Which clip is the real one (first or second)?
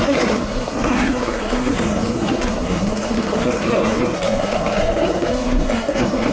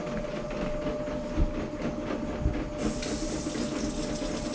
second